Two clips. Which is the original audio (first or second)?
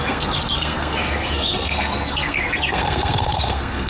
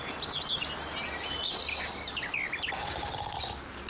second